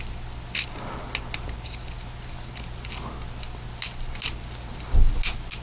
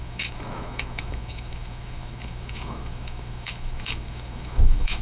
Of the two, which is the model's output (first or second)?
second